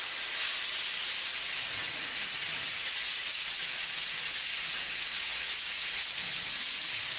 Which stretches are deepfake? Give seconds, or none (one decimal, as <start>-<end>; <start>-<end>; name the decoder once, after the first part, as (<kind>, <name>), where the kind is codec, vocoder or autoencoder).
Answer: 1.3-5.6 (vocoder, Vocos)

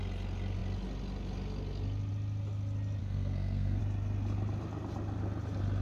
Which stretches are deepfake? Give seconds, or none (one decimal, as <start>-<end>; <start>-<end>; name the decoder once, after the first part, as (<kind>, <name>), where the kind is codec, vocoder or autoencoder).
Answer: 3.0-3.8 (codec, SNAC)

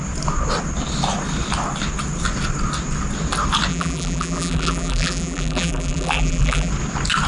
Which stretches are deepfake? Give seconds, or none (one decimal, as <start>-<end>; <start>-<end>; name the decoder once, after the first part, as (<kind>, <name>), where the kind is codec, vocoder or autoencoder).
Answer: 3.7-6.7 (vocoder, BigVGAN v2)